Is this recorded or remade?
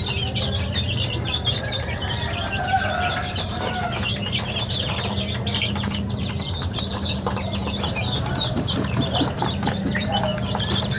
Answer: remade